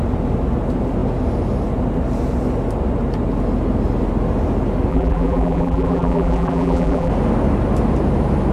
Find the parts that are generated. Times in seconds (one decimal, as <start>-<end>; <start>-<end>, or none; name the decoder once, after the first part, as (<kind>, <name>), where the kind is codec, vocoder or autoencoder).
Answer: 4.9-7.1 (vocoder, BigVGAN v2)